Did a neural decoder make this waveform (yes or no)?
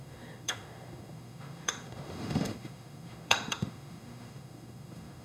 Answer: yes